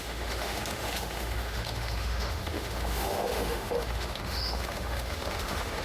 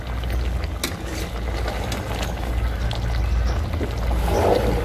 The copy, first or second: first